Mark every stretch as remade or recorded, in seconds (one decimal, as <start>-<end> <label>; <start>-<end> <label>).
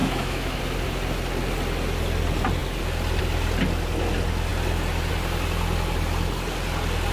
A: 0.0-0.6 remade; 0.6-7.1 recorded